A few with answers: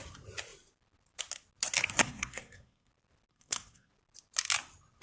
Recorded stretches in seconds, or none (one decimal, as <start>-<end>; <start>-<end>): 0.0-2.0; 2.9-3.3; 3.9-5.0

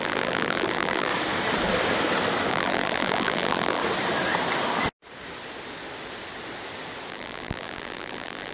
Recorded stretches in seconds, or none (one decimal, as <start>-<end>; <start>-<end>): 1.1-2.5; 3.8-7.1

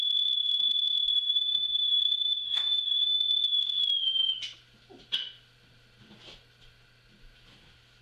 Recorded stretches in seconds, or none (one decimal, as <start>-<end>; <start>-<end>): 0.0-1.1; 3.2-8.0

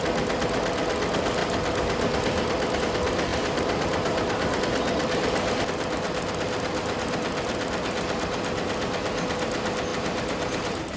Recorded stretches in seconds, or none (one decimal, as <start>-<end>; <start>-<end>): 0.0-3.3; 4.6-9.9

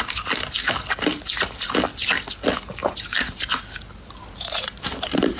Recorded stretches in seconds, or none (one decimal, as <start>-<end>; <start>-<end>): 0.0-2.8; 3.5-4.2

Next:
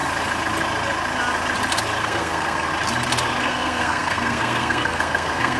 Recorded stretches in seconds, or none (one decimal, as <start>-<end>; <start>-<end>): 0.0-2.0; 2.7-3.4